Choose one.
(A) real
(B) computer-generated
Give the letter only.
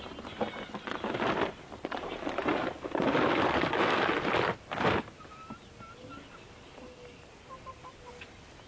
A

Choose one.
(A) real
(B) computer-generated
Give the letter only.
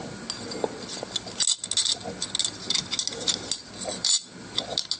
A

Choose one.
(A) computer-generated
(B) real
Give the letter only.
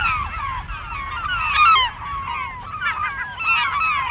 B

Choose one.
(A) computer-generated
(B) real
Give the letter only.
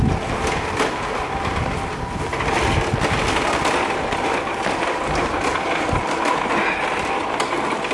B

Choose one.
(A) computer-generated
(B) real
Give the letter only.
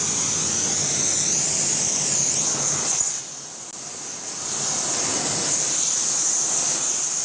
B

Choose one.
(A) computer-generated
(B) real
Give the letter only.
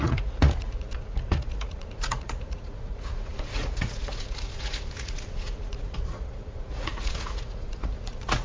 A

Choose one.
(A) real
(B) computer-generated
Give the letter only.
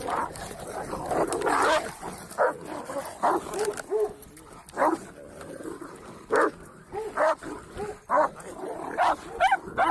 A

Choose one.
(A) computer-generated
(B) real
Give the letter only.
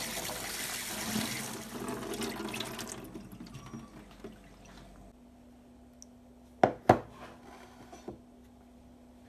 B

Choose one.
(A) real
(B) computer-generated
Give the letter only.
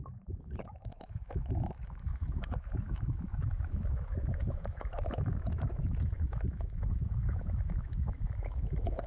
B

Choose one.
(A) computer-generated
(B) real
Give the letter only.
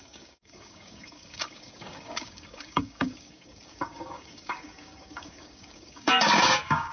A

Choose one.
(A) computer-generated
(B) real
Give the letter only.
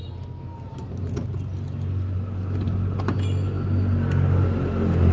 B